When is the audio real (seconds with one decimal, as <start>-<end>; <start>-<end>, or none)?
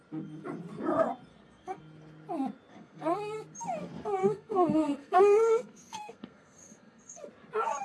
0.0-1.3; 1.8-2.7; 3.2-4.2; 7.2-7.8